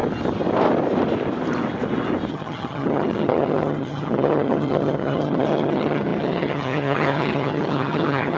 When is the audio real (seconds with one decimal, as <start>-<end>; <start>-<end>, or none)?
0.0-2.3